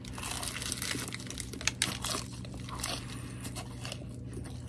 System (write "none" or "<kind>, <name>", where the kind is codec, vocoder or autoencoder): none